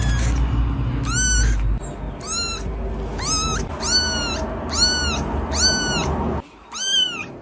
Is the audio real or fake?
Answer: real